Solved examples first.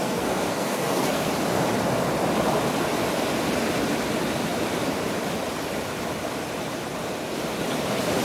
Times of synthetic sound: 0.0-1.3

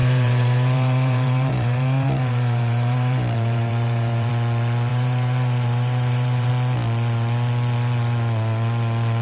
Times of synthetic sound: 0.0-4.3; 4.9-6.5

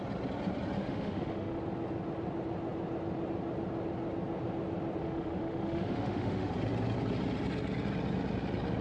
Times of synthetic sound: 0.8-1.6; 5.0-6.5

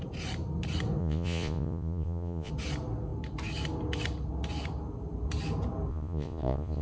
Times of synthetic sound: 1.0-2.5; 5.9-6.8

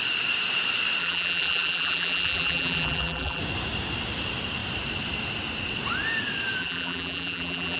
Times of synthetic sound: 1.0-3.4; 6.6-7.8

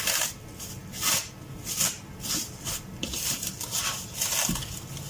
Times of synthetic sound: none

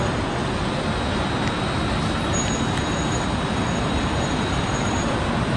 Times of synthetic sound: 0.0-0.4; 3.8-5.6